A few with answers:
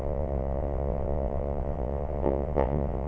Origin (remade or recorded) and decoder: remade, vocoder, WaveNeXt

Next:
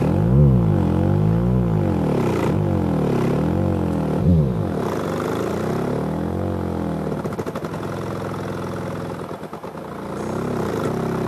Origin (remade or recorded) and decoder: recorded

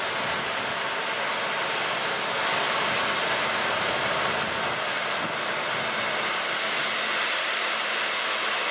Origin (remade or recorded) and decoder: recorded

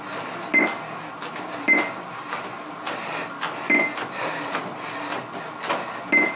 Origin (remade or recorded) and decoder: recorded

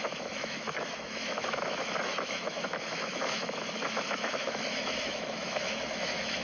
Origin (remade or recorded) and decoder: remade, autoencoder, DAC-VAE